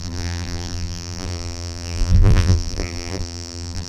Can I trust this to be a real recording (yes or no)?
no